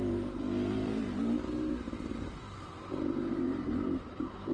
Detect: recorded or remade remade